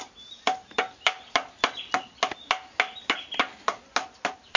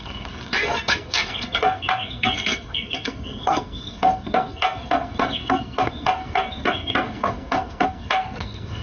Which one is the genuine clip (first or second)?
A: first